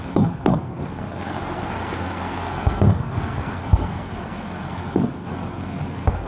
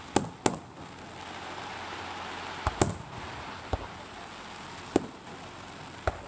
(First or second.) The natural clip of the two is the second